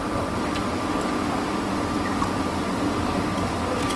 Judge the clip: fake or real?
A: real